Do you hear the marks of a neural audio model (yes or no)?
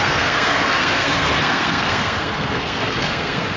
yes